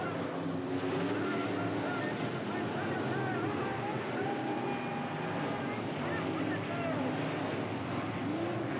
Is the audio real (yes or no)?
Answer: yes